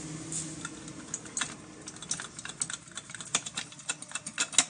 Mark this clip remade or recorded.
recorded